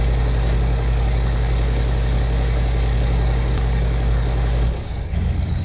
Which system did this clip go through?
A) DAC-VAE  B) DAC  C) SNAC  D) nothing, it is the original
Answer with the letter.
B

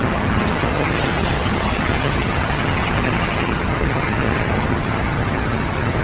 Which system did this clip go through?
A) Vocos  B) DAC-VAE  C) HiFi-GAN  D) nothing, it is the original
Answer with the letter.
C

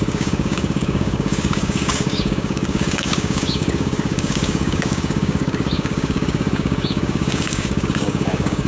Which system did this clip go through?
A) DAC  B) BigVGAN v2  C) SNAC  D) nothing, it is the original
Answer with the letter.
A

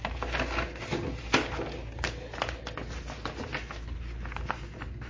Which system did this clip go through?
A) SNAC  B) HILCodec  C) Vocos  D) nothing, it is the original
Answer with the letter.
D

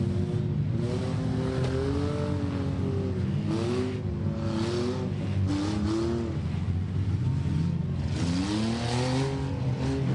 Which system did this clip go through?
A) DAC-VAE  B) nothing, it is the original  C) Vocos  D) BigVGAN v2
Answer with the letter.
B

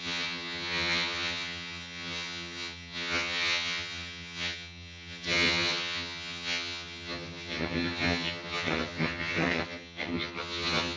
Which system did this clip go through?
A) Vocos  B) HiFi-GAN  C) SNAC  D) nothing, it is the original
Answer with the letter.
B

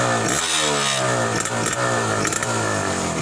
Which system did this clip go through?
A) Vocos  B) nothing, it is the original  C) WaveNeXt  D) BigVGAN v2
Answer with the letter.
B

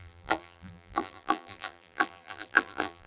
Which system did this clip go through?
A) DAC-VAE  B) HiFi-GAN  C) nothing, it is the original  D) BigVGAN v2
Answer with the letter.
D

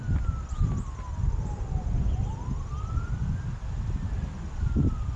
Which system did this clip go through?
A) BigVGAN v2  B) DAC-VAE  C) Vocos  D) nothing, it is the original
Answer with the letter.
D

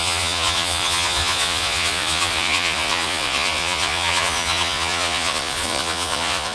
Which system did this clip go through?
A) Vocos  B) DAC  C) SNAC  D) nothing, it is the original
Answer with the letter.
A